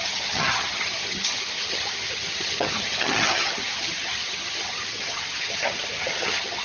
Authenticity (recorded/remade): remade